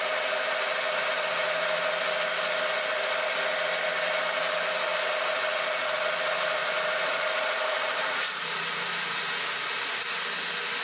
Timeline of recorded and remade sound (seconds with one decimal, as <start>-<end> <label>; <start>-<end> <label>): 0.0-6.6 recorded; 6.6-8.9 remade; 8.9-10.8 recorded